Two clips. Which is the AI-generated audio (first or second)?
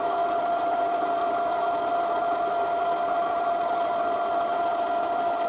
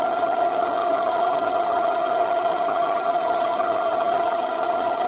second